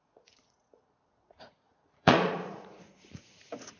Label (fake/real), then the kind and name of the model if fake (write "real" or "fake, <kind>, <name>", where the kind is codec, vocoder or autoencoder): fake, vocoder, Vocos